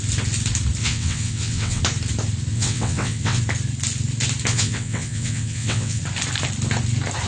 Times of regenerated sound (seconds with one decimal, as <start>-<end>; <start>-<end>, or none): 0.8-1.8; 2.5-3.4; 4.5-6.0